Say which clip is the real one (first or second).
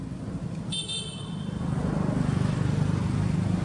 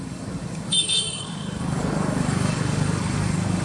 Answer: first